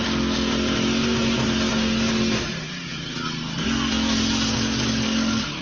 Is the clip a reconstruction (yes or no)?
no